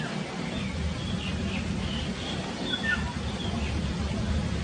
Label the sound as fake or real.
real